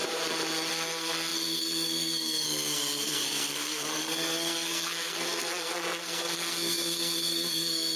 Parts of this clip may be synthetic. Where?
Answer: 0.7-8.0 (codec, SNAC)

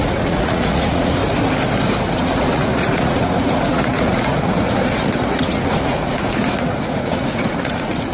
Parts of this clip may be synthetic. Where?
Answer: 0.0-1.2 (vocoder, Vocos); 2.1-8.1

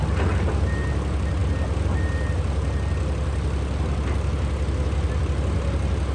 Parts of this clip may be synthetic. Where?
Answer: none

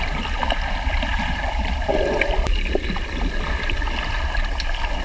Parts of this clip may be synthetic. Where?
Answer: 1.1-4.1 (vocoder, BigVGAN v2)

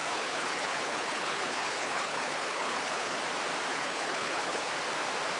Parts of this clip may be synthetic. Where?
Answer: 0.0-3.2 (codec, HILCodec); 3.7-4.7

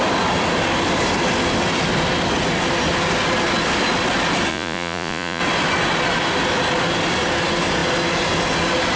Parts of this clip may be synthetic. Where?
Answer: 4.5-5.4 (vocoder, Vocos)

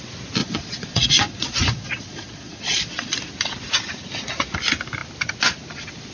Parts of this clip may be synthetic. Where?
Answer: 0.4-3.3 (vocoder, Vocos)